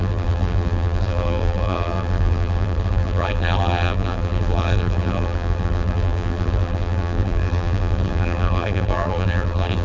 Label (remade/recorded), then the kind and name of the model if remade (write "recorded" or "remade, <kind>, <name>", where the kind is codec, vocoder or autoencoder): remade, vocoder, BigVGAN v2